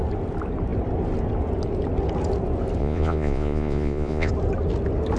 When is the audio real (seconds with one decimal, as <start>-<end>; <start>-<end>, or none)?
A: 0.0-2.8; 4.3-5.2